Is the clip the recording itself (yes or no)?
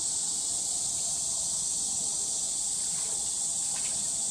yes